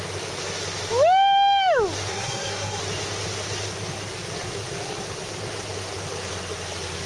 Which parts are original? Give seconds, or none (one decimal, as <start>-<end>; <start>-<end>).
0.0-2.1; 2.8-7.1